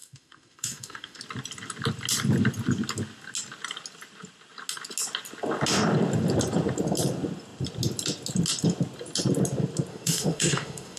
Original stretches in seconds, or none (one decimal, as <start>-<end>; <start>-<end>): 1.2-9.9